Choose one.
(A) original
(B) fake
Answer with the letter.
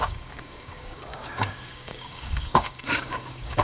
B